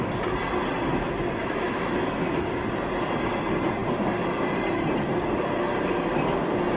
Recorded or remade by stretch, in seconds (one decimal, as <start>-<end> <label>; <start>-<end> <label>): 0.0-1.4 recorded; 1.4-2.5 remade; 2.5-6.8 recorded